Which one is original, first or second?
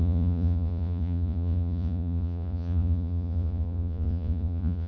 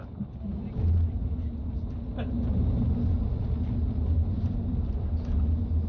second